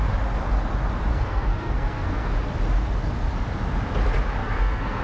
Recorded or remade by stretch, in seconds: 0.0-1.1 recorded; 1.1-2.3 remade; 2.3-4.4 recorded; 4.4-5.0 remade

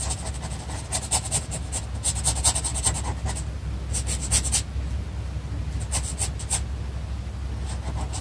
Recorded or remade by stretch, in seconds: 0.0-2.7 recorded; 2.7-3.8 remade; 3.8-8.2 recorded